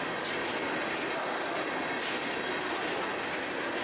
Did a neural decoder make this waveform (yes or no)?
no